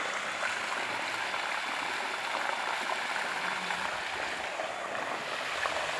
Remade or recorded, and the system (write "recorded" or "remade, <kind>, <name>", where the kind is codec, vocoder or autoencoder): recorded